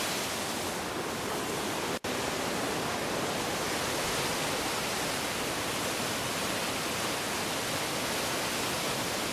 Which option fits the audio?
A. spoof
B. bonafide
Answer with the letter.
B